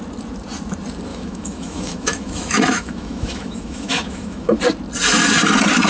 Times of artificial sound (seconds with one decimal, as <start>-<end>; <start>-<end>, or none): 1.1-4.6